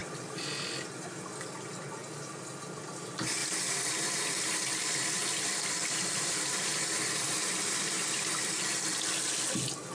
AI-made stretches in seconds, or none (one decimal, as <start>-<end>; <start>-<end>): 3.4-8.5